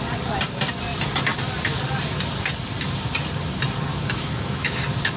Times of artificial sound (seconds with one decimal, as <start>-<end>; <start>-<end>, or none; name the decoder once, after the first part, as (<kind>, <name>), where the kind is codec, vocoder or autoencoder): 3.9-4.8 (autoencoder, DAC-VAE)